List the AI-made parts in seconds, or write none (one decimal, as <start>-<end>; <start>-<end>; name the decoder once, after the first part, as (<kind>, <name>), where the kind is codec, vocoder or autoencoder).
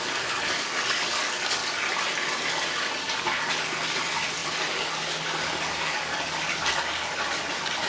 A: 0.0-1.6 (codec, DAC); 3.2-7.9